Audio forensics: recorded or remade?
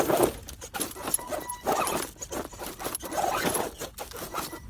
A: recorded